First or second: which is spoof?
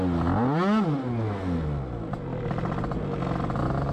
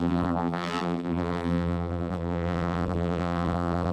second